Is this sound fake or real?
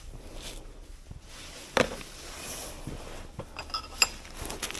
real